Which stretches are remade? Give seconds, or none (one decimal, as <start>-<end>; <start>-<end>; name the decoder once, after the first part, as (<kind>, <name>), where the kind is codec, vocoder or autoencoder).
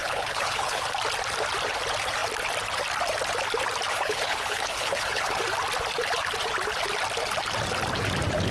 0.0-0.9 (codec, HILCodec); 3.9-5.4